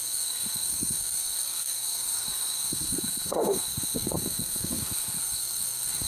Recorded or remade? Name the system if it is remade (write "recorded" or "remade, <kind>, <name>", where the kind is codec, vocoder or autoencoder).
remade, codec, SNAC